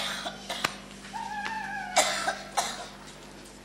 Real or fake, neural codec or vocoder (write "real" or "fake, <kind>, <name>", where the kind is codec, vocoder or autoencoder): real